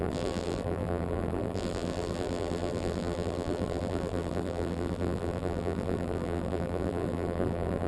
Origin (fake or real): fake